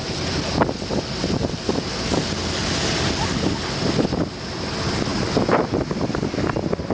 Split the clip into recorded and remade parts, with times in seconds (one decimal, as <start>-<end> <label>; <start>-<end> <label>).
0.0-6.9 recorded